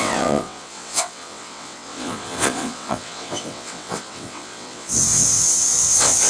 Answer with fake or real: fake